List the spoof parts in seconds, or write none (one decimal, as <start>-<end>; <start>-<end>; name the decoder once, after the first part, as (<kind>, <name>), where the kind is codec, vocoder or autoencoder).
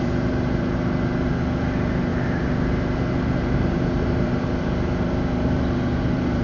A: 0.0-6.4 (vocoder, BigVGAN v2)